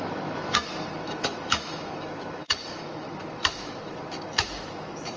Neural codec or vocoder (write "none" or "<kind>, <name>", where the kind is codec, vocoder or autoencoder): autoencoder, DAC-VAE